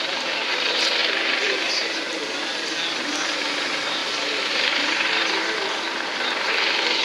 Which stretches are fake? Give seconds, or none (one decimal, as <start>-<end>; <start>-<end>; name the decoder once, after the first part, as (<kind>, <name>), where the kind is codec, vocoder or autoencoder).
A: 4.0-6.5 (vocoder, BigVGAN v2)